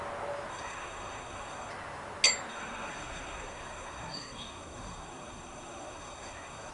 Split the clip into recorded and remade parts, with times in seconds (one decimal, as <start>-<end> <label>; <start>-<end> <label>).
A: 0.0-0.5 recorded; 0.5-1.7 remade; 1.7-2.5 recorded; 2.5-6.7 remade